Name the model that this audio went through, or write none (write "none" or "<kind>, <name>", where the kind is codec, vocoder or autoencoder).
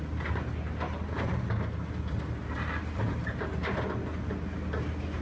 none